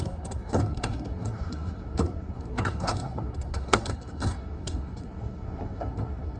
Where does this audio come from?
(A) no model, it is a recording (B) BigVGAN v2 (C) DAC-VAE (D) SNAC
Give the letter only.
D